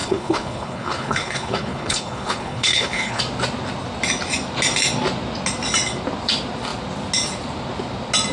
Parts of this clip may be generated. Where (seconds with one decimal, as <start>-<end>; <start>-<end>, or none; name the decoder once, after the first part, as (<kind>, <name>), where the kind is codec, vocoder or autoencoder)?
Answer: 0.0-3.2 (codec, HILCodec)